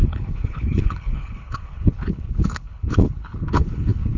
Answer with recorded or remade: remade